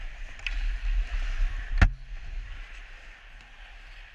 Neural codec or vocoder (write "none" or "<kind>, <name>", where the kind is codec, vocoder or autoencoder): none